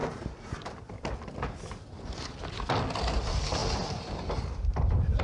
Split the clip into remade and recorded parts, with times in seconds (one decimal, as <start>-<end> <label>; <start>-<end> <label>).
0.0-0.9 remade; 0.9-3.6 recorded; 3.6-5.2 remade